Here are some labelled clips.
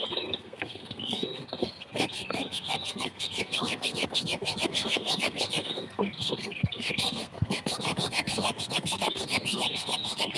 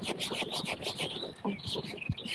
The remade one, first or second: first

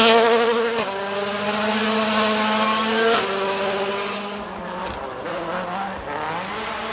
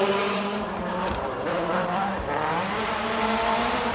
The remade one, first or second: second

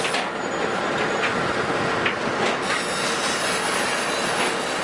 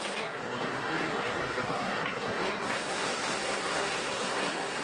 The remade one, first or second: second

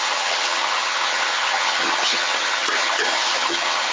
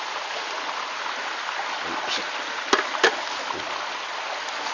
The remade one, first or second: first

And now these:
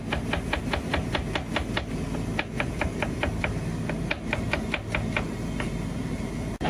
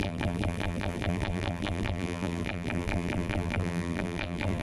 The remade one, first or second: second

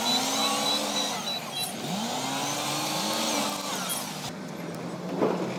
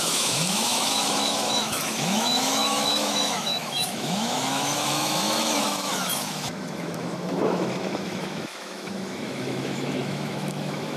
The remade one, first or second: second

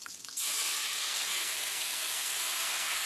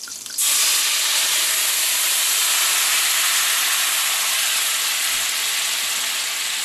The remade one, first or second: first